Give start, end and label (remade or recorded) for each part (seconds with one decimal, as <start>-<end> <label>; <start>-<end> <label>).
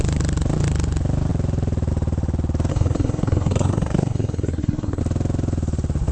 0.0-2.7 recorded; 2.7-5.0 remade; 5.0-6.1 recorded